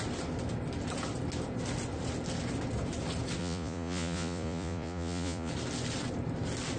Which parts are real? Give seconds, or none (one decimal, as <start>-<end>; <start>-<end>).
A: 0.0-3.4; 5.5-6.8

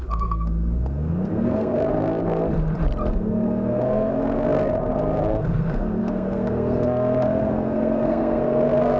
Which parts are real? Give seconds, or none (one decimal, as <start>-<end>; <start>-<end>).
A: 2.4-3.1

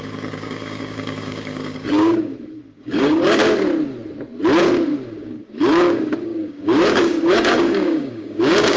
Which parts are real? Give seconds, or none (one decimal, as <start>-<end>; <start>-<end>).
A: 3.4-4.6

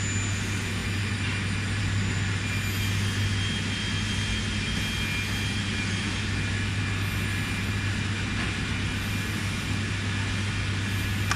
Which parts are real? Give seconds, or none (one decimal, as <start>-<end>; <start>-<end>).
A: 0.0-11.4

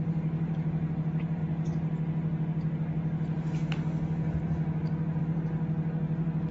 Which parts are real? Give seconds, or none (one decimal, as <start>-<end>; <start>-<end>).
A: 1.4-5.2

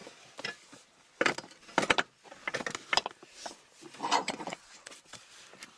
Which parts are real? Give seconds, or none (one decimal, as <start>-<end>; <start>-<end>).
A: 0.0-4.2; 5.2-5.8

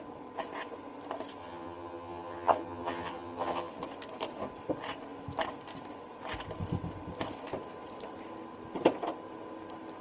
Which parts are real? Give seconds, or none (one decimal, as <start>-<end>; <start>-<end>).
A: 0.0-1.4; 3.7-10.0

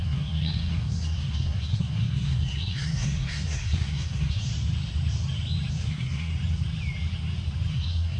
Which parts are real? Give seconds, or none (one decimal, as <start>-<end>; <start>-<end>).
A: 4.5-5.7; 6.3-7.7